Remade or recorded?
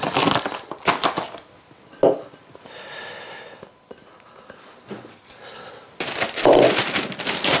recorded